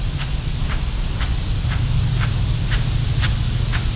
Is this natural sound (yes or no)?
yes